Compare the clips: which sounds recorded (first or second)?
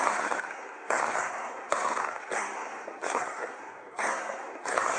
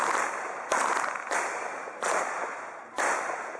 second